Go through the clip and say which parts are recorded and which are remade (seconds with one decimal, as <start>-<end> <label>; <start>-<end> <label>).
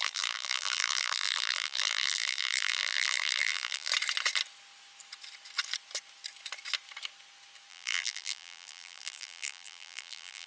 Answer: 0.0-3.9 remade; 3.9-7.7 recorded; 7.7-10.5 remade